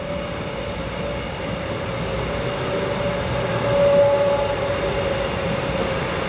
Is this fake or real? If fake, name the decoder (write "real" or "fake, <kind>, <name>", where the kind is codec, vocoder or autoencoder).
real